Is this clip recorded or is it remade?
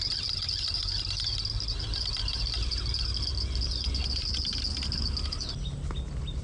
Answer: recorded